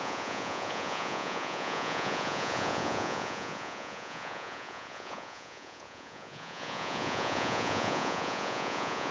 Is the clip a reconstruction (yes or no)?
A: yes